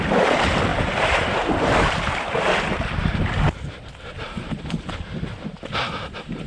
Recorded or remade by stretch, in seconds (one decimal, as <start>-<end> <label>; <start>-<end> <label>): 0.0-0.7 recorded; 0.7-4.6 remade; 4.6-6.5 recorded